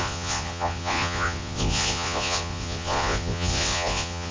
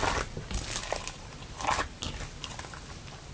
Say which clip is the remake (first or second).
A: first